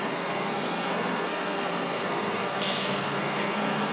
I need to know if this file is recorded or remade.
remade